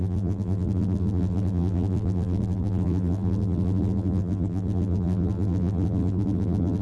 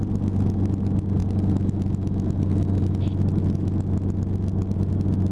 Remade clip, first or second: first